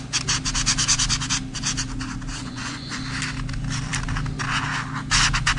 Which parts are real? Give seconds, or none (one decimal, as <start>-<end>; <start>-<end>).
0.0-2.4; 3.0-5.6